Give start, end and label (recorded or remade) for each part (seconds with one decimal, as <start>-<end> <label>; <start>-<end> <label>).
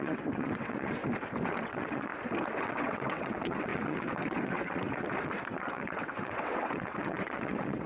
0.0-1.0 remade; 1.0-1.7 recorded; 1.7-2.1 remade; 2.1-2.6 recorded; 2.6-7.9 remade